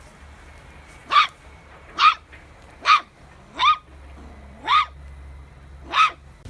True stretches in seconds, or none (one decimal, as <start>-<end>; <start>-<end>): 0.0-1.0; 3.2-6.5